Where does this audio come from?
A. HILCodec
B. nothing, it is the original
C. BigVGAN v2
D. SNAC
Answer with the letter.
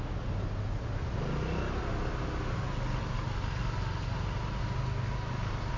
B